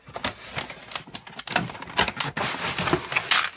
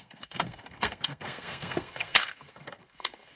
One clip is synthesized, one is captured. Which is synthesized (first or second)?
second